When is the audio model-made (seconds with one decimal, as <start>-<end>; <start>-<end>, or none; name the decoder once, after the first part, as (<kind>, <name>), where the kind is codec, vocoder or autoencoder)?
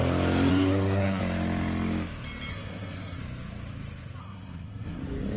0.5-1.2 (codec, SNAC); 2.5-3.2; 4.2-5.0